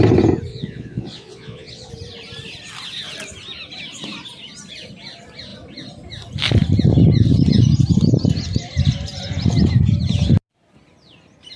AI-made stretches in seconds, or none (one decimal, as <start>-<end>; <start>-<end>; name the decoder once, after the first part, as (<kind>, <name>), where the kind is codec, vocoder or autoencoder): 0.5-1.9 (vocoder, Vocos)